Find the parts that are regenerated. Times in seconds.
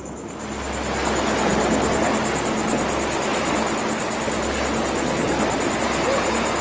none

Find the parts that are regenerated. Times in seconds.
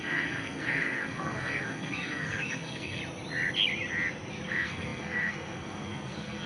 0.0-3.0; 4.5-6.5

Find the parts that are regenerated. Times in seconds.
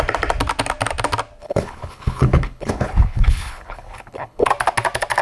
1.4-4.5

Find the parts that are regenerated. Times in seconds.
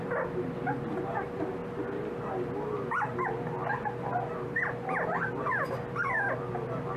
0.0-1.6; 5.5-7.0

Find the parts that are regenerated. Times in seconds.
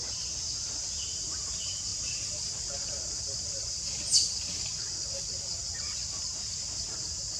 none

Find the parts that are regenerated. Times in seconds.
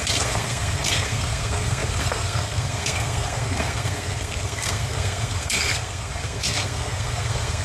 0.0-7.6